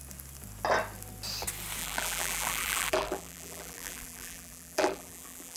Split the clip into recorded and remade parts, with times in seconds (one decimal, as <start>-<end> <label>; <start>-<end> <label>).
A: 0.0-1.8 recorded; 1.8-5.6 remade